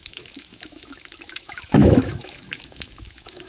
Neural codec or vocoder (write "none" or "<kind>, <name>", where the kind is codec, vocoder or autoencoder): autoencoder, DAC-VAE